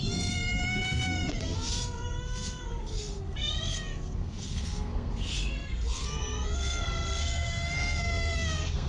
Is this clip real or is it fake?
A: fake